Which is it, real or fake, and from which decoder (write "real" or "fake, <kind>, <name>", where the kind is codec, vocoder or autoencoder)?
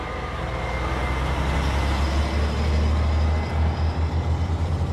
real